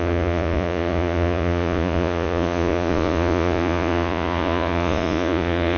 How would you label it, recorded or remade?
remade